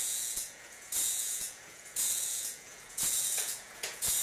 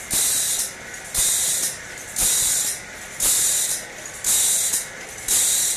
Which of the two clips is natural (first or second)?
second